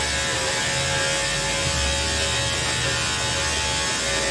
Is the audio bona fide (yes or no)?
yes